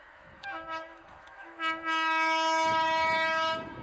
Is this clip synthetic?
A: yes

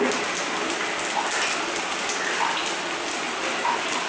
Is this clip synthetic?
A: no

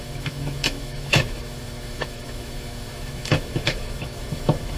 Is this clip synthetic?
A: yes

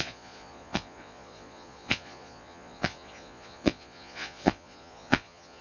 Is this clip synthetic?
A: yes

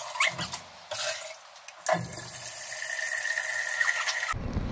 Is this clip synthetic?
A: no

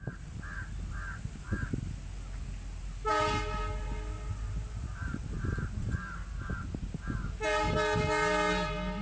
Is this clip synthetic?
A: no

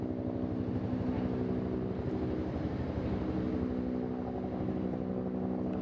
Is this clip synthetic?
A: no